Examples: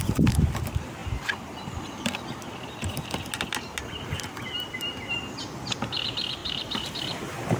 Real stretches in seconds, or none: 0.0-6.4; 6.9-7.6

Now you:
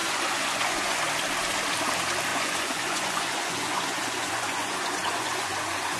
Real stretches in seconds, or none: 1.0-2.3

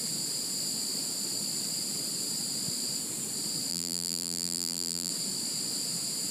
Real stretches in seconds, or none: 0.0-3.7; 5.1-6.3